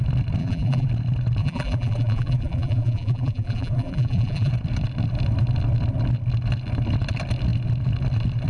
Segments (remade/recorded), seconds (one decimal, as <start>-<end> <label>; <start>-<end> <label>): 0.0-0.4 recorded; 0.4-0.9 remade; 0.9-1.4 recorded; 1.4-4.5 remade; 4.5-8.5 recorded